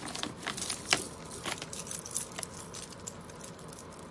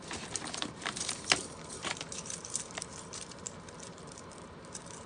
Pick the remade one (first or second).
second